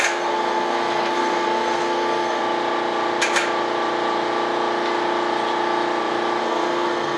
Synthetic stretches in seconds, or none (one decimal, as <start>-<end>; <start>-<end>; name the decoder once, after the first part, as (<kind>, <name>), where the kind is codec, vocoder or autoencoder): 0.0-2.4 (codec, SNAC); 6.4-7.2